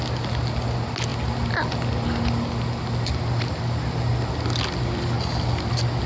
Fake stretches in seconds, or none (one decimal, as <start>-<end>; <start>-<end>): none